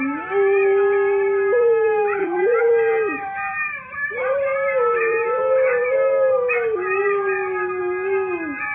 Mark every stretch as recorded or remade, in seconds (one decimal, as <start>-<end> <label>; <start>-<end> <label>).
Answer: 0.0-2.2 recorded; 2.2-2.7 remade; 2.7-8.7 recorded